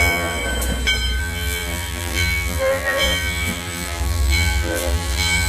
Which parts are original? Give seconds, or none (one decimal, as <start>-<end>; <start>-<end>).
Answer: 0.4-1.2